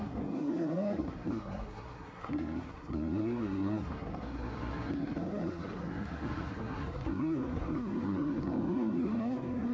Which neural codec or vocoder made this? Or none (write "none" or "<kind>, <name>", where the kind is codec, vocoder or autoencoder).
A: codec, SNAC